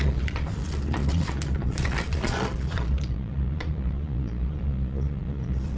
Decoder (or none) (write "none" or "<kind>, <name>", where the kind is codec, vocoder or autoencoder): vocoder, Vocos